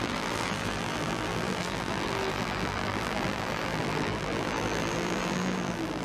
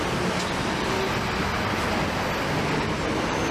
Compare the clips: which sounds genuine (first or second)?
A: second